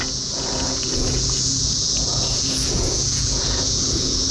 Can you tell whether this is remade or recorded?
remade